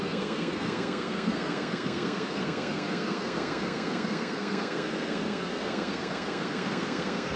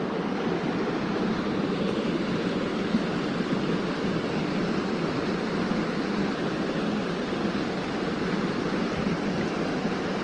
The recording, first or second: second